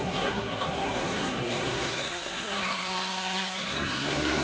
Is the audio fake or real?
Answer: fake